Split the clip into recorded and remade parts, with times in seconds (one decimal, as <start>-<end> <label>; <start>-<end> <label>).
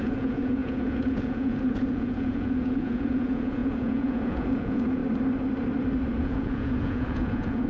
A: 0.0-5.0 remade; 5.0-6.2 recorded; 6.2-7.7 remade